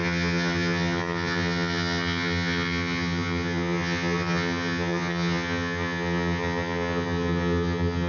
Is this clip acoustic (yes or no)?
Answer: no